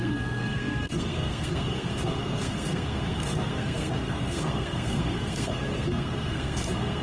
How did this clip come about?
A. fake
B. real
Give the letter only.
A